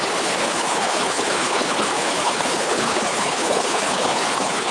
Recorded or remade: remade